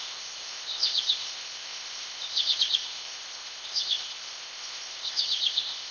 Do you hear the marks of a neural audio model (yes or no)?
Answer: yes